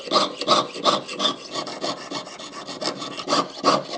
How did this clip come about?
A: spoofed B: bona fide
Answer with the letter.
B